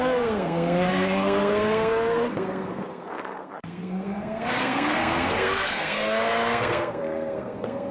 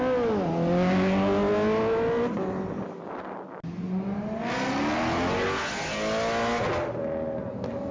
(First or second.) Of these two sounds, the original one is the second